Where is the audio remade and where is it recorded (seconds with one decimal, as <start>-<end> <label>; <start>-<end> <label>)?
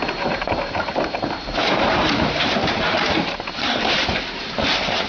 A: 0.0-5.1 remade